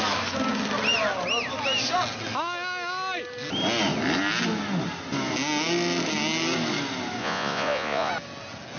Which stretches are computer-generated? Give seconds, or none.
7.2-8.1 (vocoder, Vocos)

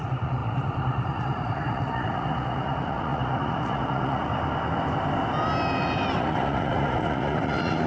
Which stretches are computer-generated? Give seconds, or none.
0.0-4.3 (vocoder, Vocos); 6.2-7.9

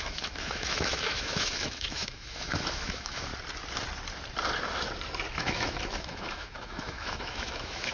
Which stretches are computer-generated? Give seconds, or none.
0.0-3.3 (autoencoder, DAC-VAE); 5.3-7.9

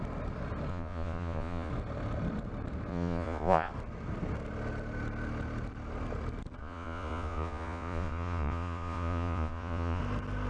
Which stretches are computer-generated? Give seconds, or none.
0.7-1.7 (vocoder, Vocos); 2.9-3.7; 6.6-10.0

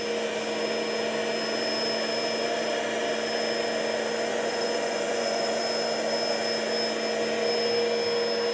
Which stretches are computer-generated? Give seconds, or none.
4.3-5.6 (vocoder, Vocos)

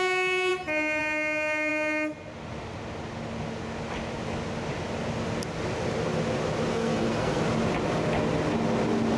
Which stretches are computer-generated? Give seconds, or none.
6.7-7.4 (codec, SNAC)

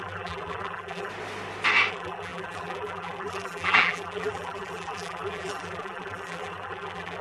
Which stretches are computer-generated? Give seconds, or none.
0.0-1.1 (vocoder, BigVGAN v2); 1.9-7.2

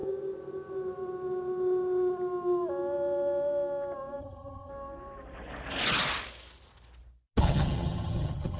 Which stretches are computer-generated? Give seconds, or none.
4.2-4.7 (vocoder, HiFi-GAN); 7.4-8.6